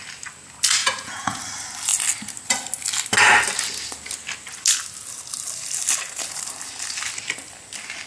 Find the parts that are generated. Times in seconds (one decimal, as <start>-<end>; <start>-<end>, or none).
0.8-1.4